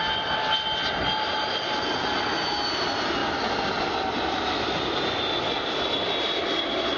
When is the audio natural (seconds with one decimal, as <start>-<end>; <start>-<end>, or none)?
0.0-7.0